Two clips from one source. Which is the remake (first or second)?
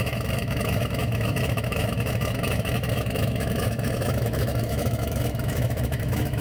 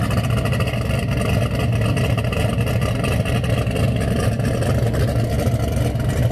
first